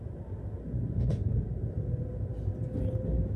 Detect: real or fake real